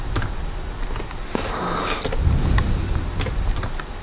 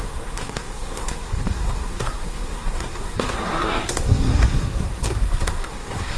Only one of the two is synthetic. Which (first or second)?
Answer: second